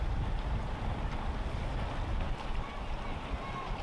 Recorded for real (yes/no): yes